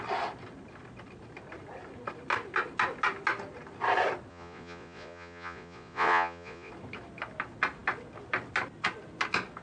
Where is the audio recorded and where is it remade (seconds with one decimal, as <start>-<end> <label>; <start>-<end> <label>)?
0.0-4.3 recorded; 4.3-6.7 remade; 6.7-9.6 recorded